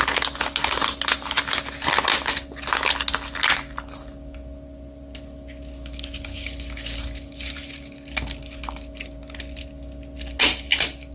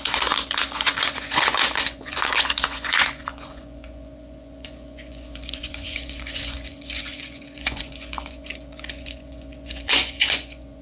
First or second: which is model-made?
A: second